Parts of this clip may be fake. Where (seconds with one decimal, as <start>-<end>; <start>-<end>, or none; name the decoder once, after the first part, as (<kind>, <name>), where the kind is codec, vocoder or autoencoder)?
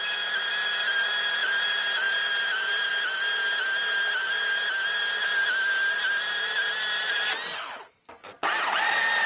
1.4-2.9 (vocoder, BigVGAN v2)